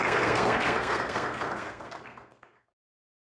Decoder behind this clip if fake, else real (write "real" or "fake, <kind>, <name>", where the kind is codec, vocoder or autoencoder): fake, codec, SNAC